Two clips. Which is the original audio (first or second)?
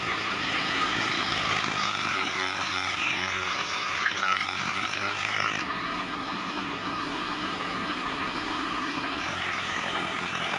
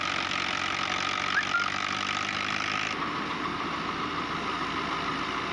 second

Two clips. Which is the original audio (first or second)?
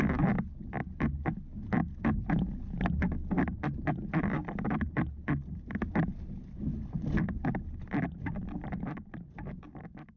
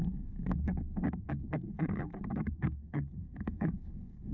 first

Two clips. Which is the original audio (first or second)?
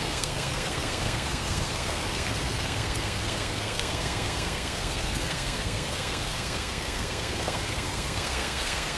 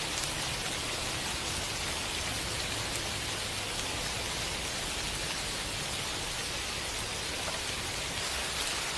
second